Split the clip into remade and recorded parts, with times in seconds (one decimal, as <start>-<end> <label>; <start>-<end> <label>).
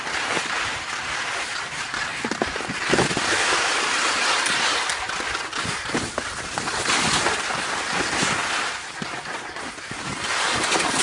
0.0-11.0 recorded